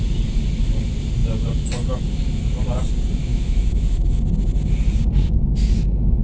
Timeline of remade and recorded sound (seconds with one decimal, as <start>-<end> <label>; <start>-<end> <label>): 0.0-3.3 recorded; 3.3-4.2 remade; 4.2-6.2 recorded